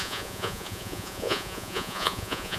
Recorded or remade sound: remade